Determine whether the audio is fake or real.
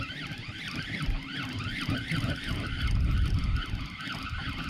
fake